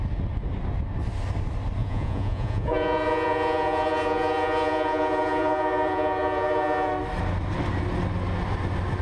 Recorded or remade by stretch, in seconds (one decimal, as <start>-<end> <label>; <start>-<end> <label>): 0.0-1.8 recorded; 1.8-6.9 remade; 6.9-9.0 recorded